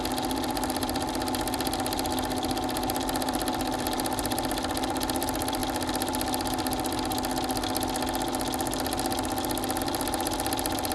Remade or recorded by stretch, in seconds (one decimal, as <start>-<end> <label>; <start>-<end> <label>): 0.0-5.6 remade; 5.6-9.8 recorded; 9.8-10.9 remade